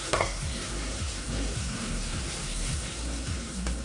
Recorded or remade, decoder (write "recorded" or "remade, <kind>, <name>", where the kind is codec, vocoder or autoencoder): remade, codec, SNAC